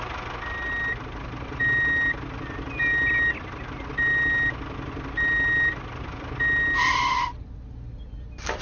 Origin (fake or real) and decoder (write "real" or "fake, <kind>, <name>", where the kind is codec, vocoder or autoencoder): real